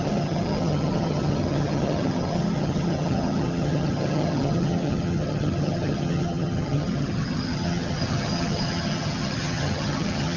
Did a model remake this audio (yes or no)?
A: yes